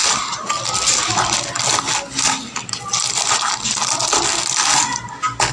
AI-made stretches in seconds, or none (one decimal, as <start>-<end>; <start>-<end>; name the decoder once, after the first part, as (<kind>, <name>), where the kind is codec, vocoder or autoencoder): none